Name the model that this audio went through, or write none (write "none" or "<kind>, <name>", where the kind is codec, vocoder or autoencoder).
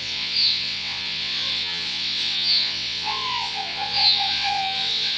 vocoder, WaveNeXt